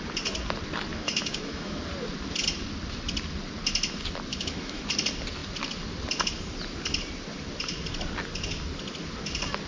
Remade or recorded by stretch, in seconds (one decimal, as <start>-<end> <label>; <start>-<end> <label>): 0.0-0.9 recorded; 0.9-1.8 remade; 1.8-4.3 recorded; 4.3-4.8 remade; 4.8-9.7 recorded